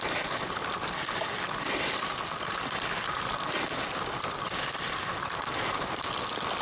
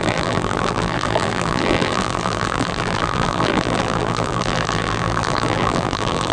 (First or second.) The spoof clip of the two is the second